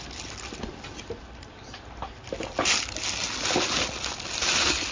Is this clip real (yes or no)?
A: yes